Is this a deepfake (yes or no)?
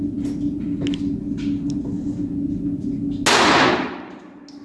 no